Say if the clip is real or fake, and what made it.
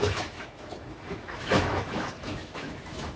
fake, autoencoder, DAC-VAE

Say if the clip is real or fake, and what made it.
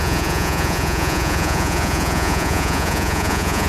fake, vocoder, Vocos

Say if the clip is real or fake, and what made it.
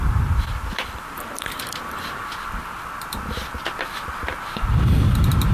real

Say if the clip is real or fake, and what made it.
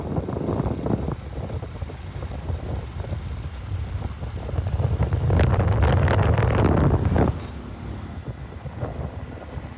real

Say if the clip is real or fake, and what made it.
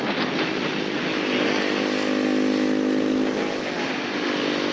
real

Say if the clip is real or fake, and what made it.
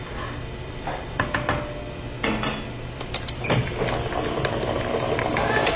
real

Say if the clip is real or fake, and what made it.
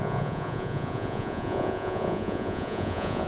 fake, vocoder, Vocos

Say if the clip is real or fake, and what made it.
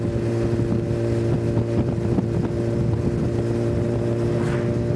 real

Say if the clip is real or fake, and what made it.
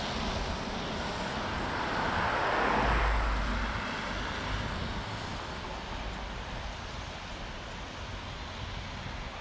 real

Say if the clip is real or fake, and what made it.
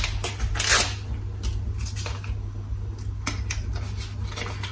real